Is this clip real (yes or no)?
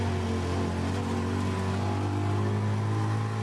yes